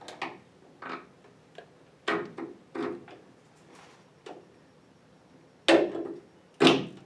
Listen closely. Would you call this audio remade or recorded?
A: recorded